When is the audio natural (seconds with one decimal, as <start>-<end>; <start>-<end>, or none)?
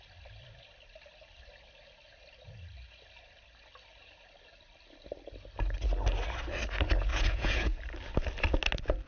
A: 0.0-7.1; 7.8-9.1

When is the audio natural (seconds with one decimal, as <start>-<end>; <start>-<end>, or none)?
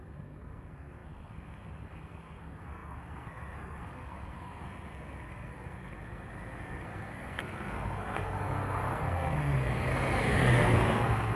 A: none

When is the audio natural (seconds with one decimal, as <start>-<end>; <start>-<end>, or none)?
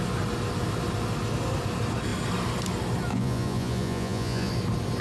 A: 0.0-3.1; 4.5-5.0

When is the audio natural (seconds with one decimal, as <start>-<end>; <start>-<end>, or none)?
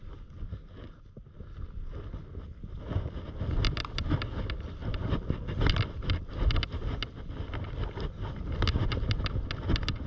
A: 0.0-10.1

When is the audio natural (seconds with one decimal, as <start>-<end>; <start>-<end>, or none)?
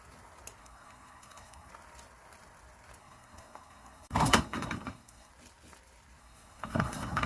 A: 0.0-0.6; 1.7-3.0; 5.3-6.2